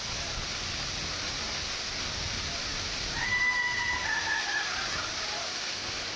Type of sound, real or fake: real